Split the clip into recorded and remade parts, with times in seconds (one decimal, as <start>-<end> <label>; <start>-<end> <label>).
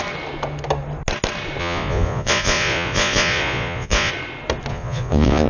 0.0-1.6 recorded; 1.6-4.1 remade; 4.1-4.7 recorded; 4.7-5.5 remade